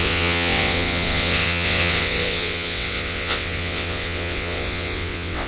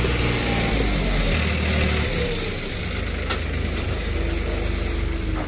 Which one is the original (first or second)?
second